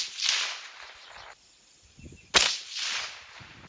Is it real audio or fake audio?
real